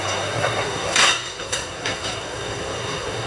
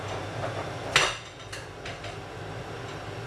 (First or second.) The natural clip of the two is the second